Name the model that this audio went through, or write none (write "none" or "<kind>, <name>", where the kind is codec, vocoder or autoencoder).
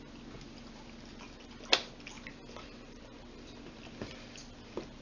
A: none